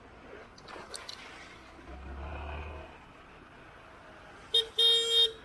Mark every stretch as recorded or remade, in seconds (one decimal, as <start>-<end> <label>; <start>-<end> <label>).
0.0-5.4 recorded